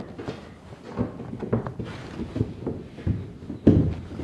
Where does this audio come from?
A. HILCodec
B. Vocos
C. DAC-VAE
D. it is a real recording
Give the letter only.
D